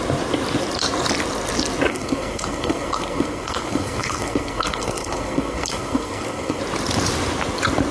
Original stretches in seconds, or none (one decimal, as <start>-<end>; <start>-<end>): 0.0-1.9; 6.6-7.9